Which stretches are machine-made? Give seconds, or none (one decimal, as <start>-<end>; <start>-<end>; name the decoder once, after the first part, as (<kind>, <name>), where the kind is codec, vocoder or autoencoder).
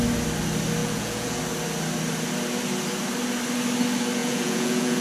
0.8-1.4 (vocoder, Vocos); 4.2-5.0